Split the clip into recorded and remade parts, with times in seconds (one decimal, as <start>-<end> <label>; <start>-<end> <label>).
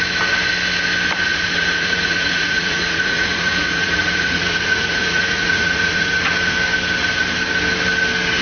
0.0-1.3 recorded; 1.3-6.3 remade; 6.3-8.4 recorded